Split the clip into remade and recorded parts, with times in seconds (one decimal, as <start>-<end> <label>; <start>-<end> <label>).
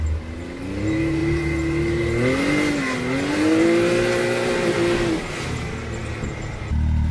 0.0-7.1 recorded